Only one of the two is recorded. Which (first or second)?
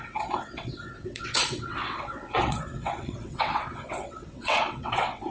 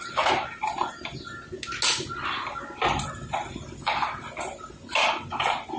second